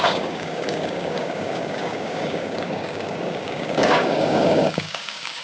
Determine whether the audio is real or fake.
fake